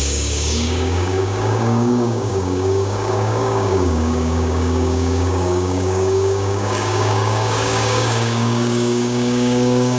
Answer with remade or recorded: remade